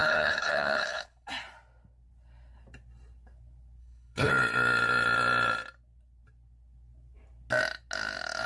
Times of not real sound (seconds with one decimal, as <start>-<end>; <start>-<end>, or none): 0.0-1.3; 3.8-4.3